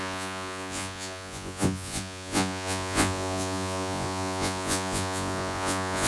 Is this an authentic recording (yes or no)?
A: no